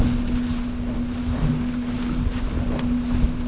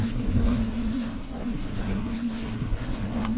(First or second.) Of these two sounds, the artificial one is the second